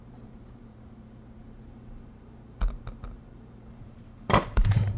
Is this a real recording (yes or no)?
no